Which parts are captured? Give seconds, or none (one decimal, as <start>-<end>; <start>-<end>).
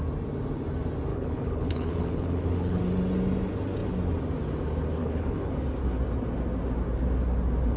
0.0-1.1; 2.8-5.0; 5.5-7.8